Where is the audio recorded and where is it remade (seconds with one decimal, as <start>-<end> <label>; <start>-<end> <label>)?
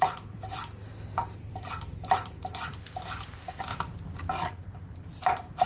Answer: 0.0-5.7 remade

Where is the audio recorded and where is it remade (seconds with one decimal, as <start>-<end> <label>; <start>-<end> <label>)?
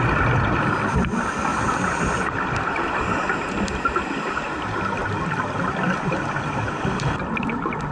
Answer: 0.0-1.5 recorded; 1.5-2.1 remade; 2.1-7.9 recorded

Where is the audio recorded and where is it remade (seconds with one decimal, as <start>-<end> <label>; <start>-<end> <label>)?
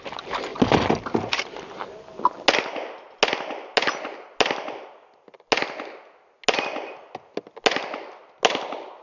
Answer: 0.0-9.0 recorded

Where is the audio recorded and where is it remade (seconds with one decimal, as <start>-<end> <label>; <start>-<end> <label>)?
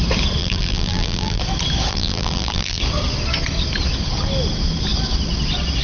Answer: 0.0-0.4 recorded; 0.4-1.4 remade; 1.4-1.9 recorded; 1.9-2.8 remade; 2.8-5.8 recorded